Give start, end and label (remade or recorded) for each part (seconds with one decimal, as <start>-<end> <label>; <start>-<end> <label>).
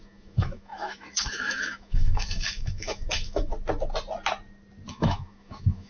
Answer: 0.0-3.5 remade; 3.5-4.9 recorded; 4.9-5.9 remade